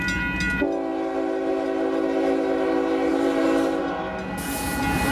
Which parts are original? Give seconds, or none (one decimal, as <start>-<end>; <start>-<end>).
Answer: 0.0-3.1; 4.0-5.1